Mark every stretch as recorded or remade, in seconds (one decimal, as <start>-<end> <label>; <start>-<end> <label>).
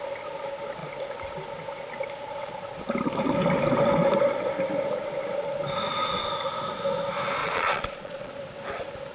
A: 0.0-7.4 recorded; 7.4-8.3 remade; 8.3-9.1 recorded